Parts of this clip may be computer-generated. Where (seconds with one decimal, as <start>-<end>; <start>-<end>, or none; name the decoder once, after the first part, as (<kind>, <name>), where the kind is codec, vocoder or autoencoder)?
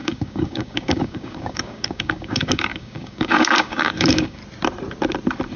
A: 0.0-4.4 (codec, DAC)